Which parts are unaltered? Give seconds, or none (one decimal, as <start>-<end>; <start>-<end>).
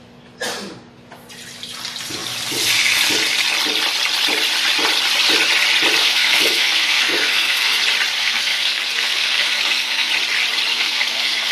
0.0-6.0; 7.8-8.2; 10.1-10.7